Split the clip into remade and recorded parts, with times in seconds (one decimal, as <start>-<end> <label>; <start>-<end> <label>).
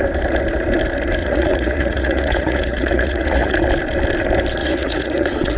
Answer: 0.0-1.2 recorded; 1.2-3.6 remade; 3.6-4.6 recorded; 4.6-5.6 remade